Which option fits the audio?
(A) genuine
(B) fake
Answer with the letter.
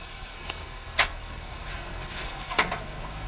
B